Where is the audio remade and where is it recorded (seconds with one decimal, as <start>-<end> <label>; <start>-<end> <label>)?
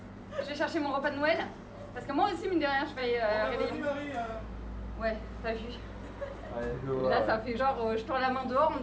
0.0-8.8 recorded